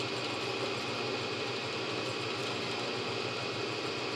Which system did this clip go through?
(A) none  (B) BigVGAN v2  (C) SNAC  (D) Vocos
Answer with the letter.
A